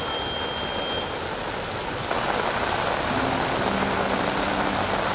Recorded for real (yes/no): yes